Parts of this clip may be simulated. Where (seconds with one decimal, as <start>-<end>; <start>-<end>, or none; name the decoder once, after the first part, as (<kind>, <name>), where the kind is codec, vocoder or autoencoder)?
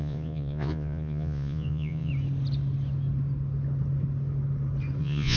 0.0-2.1 (vocoder, Vocos); 5.0-5.4